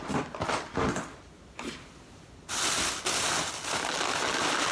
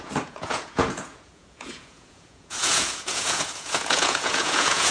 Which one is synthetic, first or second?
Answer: second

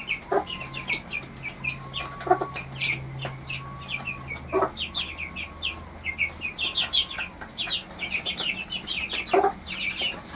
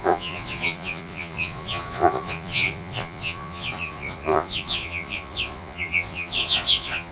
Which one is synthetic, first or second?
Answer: second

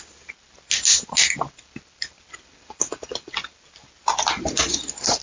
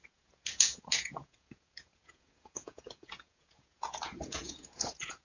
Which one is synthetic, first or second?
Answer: second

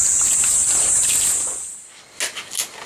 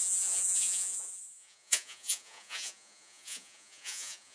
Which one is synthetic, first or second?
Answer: second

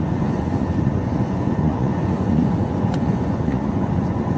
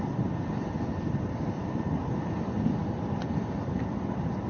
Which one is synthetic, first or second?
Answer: first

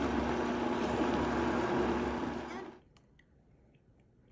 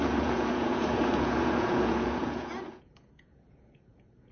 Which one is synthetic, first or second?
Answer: second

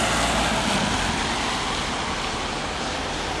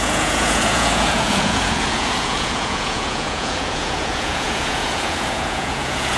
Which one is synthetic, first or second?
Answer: second